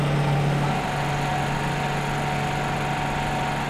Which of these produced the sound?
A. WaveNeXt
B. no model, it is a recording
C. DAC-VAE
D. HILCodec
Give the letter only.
B